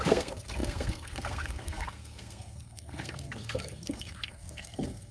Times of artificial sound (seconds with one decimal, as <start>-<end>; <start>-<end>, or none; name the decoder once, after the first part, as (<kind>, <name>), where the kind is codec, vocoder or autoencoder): 0.0-5.1 (codec, SNAC)